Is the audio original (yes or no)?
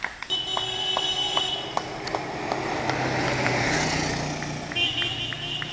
yes